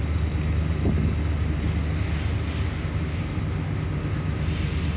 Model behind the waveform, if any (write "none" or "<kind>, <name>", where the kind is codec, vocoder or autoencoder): none